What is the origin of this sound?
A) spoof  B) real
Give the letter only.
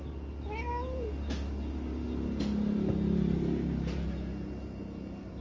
B